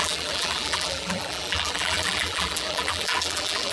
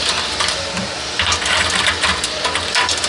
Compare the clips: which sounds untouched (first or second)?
second